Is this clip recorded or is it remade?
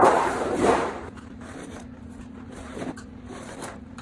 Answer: remade